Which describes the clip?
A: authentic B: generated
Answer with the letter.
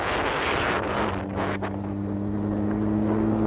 A